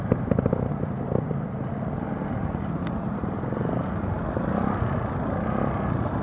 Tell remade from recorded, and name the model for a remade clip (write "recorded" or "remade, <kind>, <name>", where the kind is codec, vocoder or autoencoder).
recorded